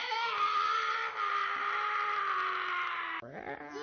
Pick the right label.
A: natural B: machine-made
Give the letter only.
A